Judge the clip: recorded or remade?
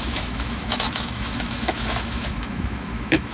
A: remade